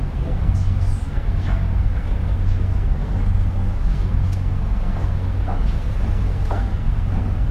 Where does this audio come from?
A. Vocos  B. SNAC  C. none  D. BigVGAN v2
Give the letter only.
B